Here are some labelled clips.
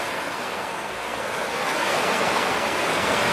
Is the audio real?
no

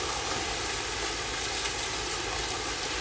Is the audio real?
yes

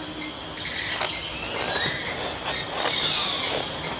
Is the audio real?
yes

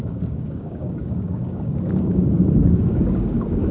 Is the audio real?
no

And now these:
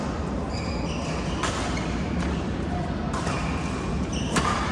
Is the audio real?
yes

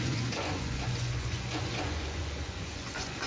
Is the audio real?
no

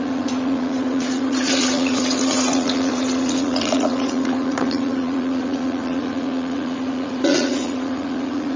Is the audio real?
no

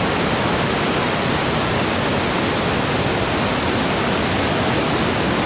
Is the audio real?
yes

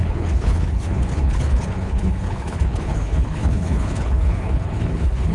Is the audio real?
no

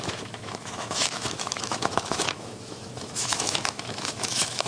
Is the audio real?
no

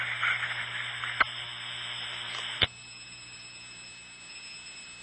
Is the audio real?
yes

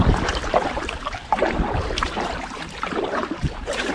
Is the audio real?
no